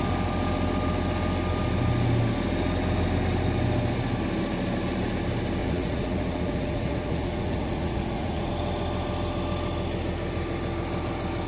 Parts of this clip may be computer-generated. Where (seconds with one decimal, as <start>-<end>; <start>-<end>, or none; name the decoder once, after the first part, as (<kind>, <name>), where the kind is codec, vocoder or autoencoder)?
5.6-8.5 (vocoder, Vocos)